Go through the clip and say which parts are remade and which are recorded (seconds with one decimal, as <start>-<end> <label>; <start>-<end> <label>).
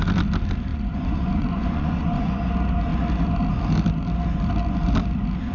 0.0-0.7 recorded; 0.7-2.5 remade; 2.5-5.5 recorded